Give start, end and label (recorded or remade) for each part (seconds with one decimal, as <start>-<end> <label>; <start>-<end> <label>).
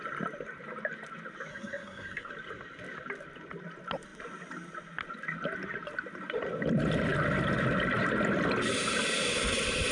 0.0-1.5 recorded; 1.5-2.3 remade; 2.3-9.9 recorded